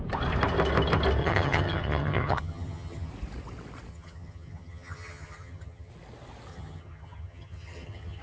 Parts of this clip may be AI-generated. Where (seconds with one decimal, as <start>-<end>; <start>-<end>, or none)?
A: 1.2-3.1; 3.9-5.9; 6.5-8.2